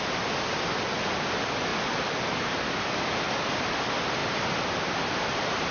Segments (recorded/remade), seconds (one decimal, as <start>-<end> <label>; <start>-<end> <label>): 0.0-1.7 recorded; 1.7-2.5 remade; 2.5-4.2 recorded; 4.2-5.7 remade